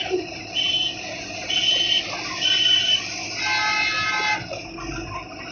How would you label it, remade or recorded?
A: recorded